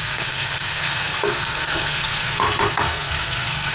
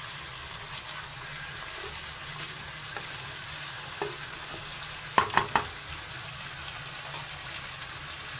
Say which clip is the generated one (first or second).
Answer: first